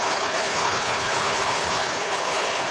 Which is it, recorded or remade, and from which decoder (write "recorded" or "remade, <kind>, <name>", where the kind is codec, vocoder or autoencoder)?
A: remade, codec, HILCodec